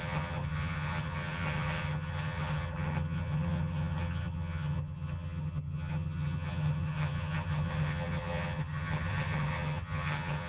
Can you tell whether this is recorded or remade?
remade